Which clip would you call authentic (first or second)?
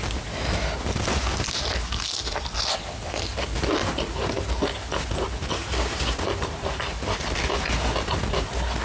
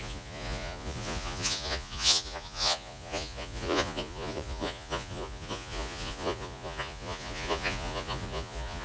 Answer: first